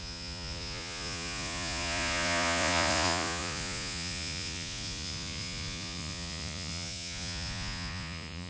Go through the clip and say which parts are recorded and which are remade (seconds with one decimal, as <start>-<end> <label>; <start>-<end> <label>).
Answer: 0.0-8.5 remade